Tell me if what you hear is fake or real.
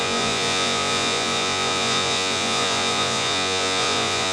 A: fake